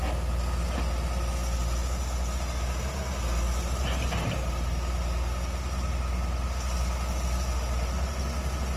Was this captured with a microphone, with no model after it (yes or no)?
yes